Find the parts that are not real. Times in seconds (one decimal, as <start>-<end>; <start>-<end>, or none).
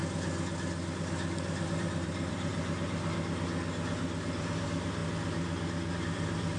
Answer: 1.7-2.5; 4.4-5.0; 6.0-6.6